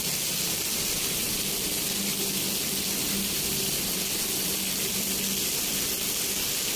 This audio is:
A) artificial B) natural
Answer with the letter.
B